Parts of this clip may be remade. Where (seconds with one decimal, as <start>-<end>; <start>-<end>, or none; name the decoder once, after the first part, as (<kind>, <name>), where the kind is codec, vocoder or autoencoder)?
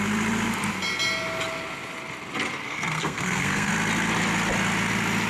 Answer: 2.6-3.7 (codec, SNAC)